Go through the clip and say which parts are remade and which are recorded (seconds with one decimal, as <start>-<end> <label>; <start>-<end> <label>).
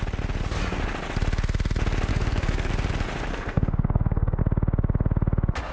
0.0-2.1 recorded; 2.1-2.7 remade; 2.7-3.3 recorded; 3.3-4.4 remade; 4.4-5.7 recorded